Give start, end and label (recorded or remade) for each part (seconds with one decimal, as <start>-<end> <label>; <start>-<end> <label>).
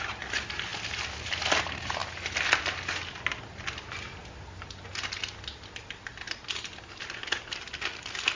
0.0-0.7 remade; 0.7-1.2 recorded; 1.2-2.0 remade; 2.0-7.0 recorded; 7.0-8.4 remade